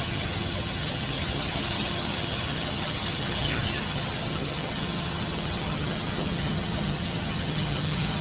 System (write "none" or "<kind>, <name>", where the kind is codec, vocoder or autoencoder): vocoder, HiFi-GAN